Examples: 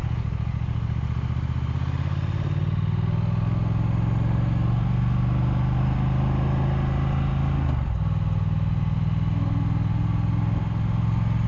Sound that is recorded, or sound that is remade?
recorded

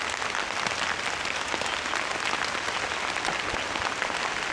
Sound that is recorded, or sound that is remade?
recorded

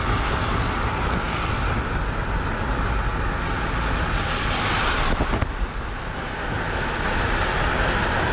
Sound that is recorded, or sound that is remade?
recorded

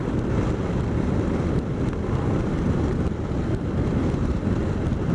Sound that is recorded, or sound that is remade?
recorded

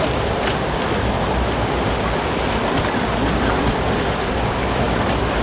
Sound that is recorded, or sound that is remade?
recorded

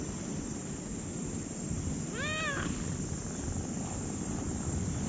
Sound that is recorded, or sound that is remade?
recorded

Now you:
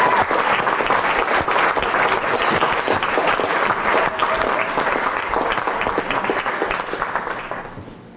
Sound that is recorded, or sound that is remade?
recorded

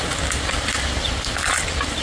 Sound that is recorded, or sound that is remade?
recorded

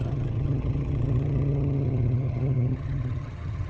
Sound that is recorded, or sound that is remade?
remade